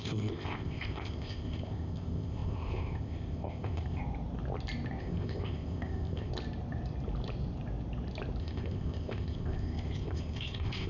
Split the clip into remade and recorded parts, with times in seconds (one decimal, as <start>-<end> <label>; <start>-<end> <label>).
0.0-4.0 remade; 4.0-5.0 recorded; 5.0-6.3 remade; 6.3-8.4 recorded; 8.4-10.9 remade